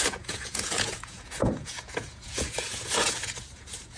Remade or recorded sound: remade